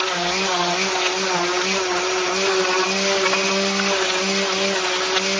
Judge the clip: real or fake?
real